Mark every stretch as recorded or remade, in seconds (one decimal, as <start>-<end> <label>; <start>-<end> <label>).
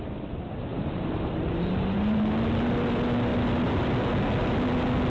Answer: 0.0-0.7 recorded; 0.7-2.3 remade; 2.3-5.1 recorded